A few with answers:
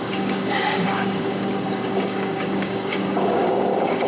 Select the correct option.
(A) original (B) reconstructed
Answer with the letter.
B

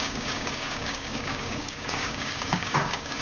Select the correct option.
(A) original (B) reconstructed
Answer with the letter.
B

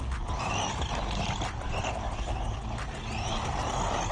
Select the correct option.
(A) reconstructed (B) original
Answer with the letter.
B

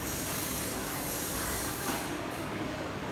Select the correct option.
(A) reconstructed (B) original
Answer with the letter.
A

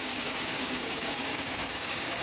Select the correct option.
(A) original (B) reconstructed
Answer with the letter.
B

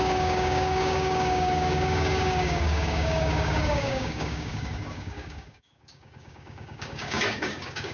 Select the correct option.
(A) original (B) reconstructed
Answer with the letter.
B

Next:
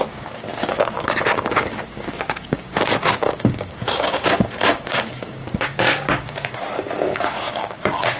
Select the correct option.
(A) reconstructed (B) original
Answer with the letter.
A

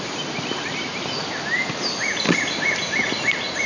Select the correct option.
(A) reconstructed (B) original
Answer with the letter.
B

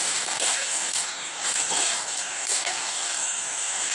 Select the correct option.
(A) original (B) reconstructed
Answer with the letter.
B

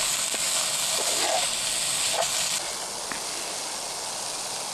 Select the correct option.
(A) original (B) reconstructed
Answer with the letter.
A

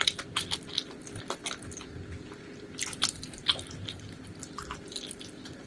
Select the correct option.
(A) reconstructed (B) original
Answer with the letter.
B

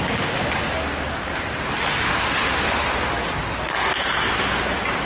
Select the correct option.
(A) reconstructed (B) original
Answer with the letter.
B